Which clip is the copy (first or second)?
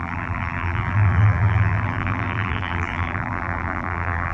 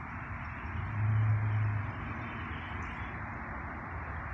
first